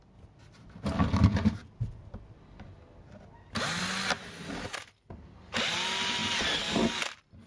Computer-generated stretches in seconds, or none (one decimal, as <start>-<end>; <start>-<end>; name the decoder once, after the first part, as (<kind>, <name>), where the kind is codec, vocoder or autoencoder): 1.6-2.4 (vocoder, BigVGAN v2)